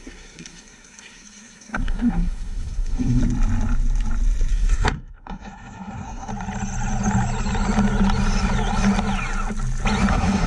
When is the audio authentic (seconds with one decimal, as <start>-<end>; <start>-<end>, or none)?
3.2-4.5; 6.3-10.1